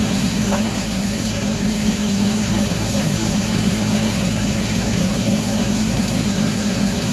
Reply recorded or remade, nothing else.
remade